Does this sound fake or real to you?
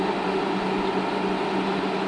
real